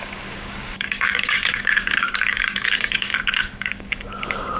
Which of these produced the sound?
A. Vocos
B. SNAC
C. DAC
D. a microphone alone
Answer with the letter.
C